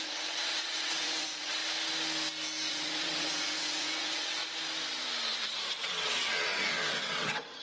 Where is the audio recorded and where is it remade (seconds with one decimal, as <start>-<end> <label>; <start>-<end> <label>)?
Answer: 0.0-1.6 remade; 1.6-2.7 recorded; 2.7-4.4 remade; 4.4-5.3 recorded; 5.3-7.6 remade